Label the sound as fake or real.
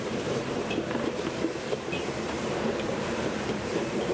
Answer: fake